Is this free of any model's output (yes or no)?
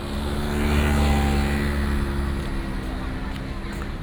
yes